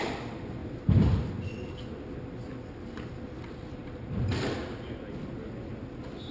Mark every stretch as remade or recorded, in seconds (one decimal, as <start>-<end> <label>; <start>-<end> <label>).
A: 0.0-6.3 recorded